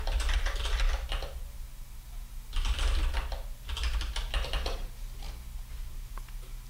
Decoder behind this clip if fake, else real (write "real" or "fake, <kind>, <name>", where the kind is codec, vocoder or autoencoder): real